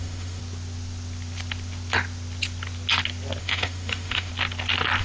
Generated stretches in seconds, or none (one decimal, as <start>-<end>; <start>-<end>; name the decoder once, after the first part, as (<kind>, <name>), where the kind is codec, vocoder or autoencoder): 0.0-0.4 (autoencoder, DAC-VAE); 3.4-4.3